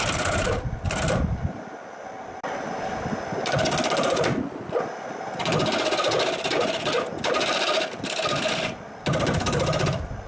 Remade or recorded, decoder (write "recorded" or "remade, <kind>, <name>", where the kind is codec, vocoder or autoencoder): recorded